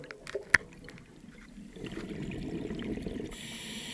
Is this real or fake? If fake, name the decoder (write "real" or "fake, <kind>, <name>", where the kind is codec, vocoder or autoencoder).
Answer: real